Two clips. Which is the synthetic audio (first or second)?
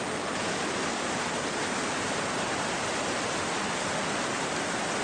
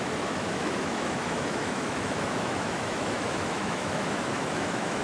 second